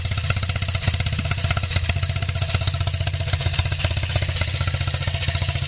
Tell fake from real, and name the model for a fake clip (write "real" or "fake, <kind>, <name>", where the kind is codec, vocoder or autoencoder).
real